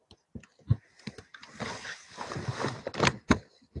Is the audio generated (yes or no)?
no